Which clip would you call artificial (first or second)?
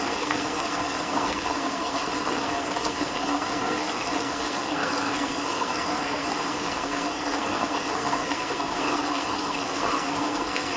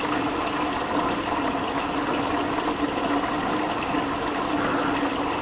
first